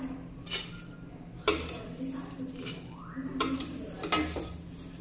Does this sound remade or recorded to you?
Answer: recorded